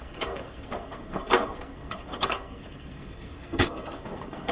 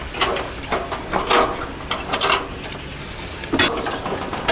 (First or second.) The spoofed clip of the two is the first